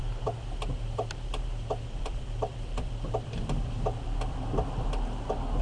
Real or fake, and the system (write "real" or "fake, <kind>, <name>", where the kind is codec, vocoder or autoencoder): fake, vocoder, BigVGAN v2